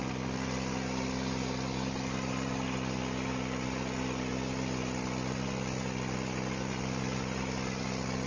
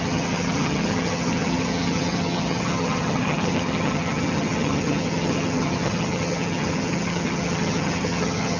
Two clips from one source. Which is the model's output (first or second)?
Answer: second